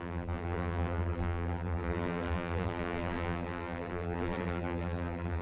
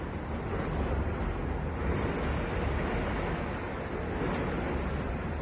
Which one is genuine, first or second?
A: second